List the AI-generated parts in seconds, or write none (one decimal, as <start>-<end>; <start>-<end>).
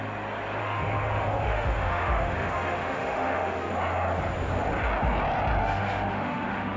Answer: 0.6-3.7; 5.6-6.8